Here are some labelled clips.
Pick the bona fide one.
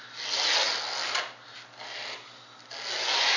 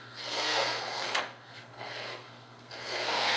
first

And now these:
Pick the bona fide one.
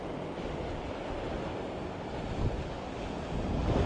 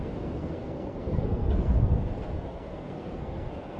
first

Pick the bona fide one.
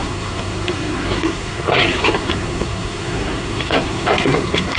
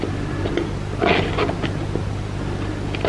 second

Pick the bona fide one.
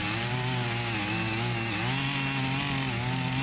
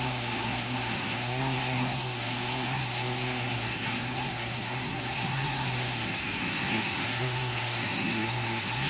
first